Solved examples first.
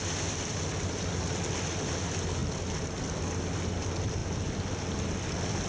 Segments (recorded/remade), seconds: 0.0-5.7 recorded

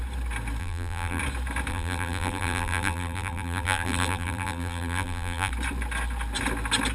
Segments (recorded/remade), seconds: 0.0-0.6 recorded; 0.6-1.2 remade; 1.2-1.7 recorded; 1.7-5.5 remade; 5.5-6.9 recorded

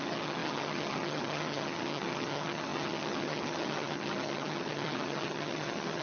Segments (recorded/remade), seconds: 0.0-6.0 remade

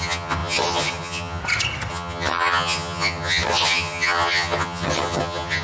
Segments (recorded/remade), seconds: 0.0-1.4 remade; 1.4-1.9 recorded; 1.9-5.6 remade

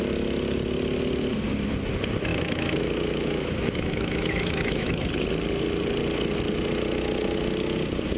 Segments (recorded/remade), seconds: 0.0-2.3 recorded; 2.3-5.1 remade; 5.1-8.2 recorded

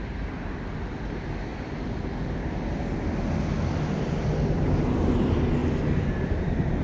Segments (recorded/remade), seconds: 0.0-6.8 recorded

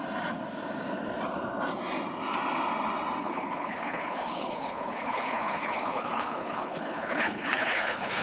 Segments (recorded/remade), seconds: 0.0-3.2 recorded; 3.2-8.2 remade